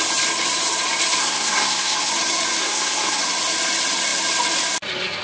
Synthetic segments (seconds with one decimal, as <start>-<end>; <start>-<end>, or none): 1.2-2.1; 2.6-3.2